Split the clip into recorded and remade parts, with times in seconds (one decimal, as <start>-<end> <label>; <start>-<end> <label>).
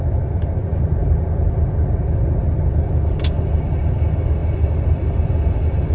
0.0-5.9 recorded